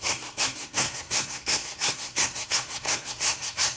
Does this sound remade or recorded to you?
remade